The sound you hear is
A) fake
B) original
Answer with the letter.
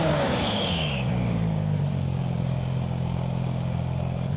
A